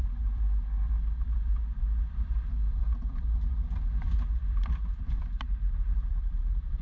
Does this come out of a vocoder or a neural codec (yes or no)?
yes